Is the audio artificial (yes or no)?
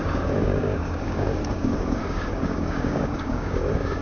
yes